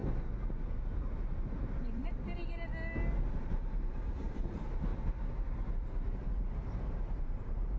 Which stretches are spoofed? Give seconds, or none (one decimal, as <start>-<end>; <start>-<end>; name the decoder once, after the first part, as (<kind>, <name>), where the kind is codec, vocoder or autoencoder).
0.5-2.7 (vocoder, BigVGAN v2); 3.3-7.8

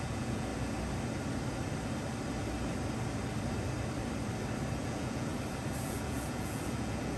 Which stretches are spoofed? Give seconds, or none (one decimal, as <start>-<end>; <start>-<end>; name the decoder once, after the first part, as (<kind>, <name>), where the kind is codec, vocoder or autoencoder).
0.0-0.5 (vocoder, Vocos); 4.8-5.3; 5.8-7.2